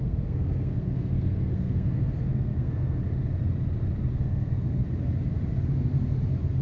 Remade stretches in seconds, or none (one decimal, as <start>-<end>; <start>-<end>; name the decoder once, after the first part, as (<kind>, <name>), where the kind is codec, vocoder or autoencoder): 0.0-3.0 (codec, SNAC); 4.1-4.8